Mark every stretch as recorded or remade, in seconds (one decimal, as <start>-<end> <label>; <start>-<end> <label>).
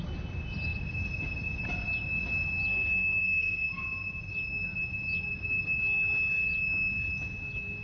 0.0-2.7 recorded; 2.7-3.7 remade; 3.7-7.8 recorded